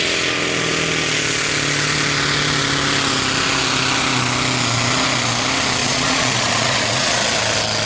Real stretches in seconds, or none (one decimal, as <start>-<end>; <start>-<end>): 0.0-5.8; 7.2-7.9